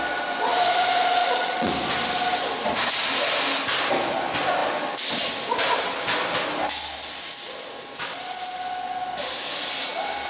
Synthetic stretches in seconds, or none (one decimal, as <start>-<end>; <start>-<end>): 1.2-1.7